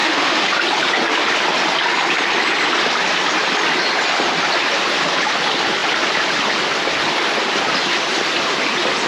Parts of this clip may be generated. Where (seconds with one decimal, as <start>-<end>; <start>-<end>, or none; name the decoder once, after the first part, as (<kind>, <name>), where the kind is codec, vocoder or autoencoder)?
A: 0.0-0.5 (autoencoder, DAC-VAE)